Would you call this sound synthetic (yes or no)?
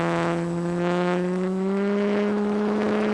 yes